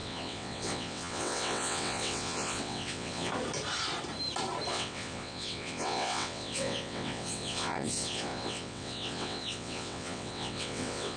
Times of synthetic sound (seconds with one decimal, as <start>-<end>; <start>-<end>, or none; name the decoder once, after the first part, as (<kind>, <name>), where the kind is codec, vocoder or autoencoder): 0.0-3.3 (vocoder, WaveNeXt); 4.7-11.2